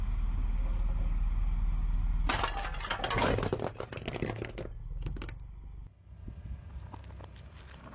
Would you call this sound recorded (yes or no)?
yes